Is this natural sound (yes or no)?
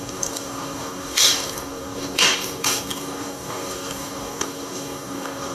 no